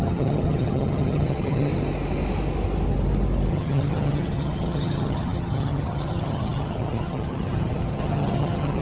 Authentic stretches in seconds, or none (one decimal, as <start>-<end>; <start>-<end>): 1.7-3.5